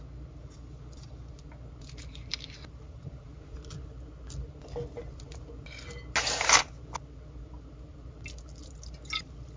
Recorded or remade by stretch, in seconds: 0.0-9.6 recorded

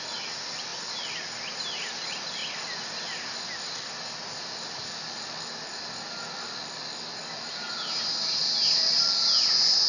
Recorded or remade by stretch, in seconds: 0.0-9.9 recorded

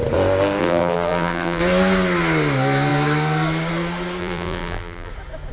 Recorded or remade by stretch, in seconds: 0.0-0.6 recorded; 0.6-1.6 remade; 1.6-4.2 recorded; 4.2-5.1 remade; 5.1-5.5 recorded

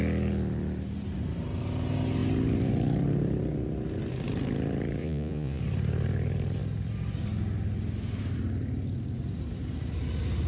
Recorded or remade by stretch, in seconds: 0.0-5.0 recorded; 5.0-5.6 remade; 5.6-10.5 recorded